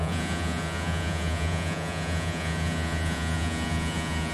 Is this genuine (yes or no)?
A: no